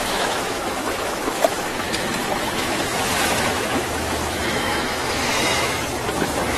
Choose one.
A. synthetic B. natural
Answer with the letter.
A